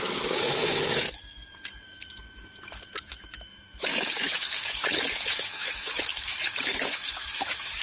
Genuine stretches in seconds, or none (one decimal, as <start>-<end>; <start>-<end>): none